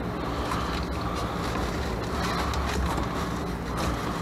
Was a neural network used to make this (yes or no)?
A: no